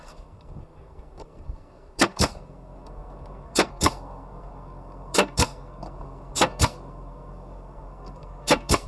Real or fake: fake